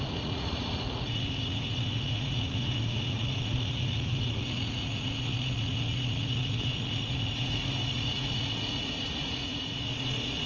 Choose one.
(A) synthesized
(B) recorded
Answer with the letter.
A